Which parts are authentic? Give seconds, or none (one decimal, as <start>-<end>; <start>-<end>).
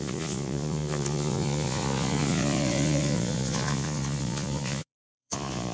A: none